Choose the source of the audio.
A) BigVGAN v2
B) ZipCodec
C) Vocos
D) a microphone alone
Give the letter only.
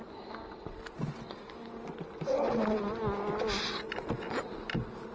D